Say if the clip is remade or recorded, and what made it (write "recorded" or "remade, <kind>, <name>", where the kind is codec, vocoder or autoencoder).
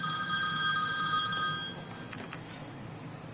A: recorded